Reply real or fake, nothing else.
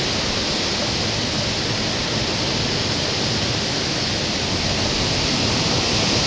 real